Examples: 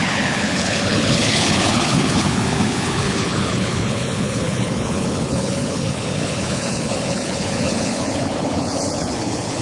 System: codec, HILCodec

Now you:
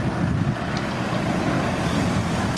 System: none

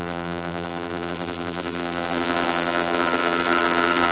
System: vocoder, BigVGAN v2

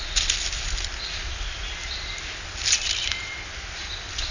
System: none